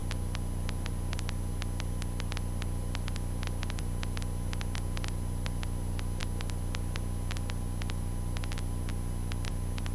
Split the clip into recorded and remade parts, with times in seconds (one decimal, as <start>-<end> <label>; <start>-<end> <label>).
0.0-9.9 recorded